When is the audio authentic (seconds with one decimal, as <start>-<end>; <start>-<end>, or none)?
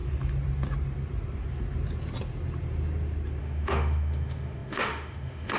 0.0-3.4